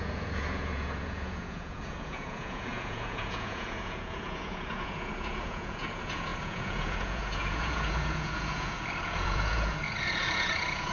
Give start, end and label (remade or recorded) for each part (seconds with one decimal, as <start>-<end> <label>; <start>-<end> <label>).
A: 0.0-10.9 remade